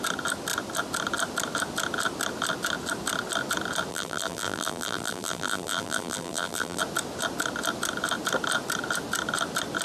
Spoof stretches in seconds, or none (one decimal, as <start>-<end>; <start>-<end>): 3.9-6.8